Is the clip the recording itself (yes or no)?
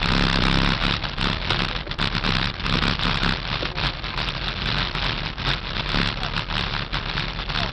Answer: yes